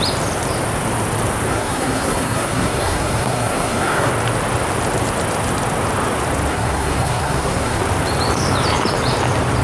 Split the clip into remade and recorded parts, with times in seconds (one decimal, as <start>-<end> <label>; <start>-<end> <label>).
0.0-1.5 recorded; 1.5-4.1 remade; 4.1-6.5 recorded; 6.5-7.8 remade; 7.8-9.6 recorded